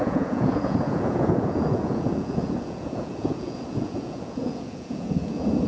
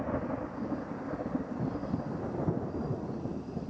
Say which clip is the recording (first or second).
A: second